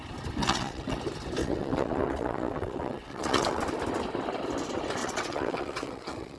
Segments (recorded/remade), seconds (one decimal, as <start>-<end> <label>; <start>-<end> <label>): 0.0-0.4 recorded; 0.4-1.0 remade; 1.0-1.4 recorded; 1.4-3.6 remade; 3.6-5.0 recorded; 5.0-6.4 remade